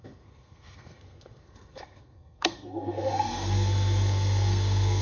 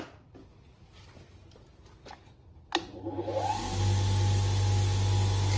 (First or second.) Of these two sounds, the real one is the second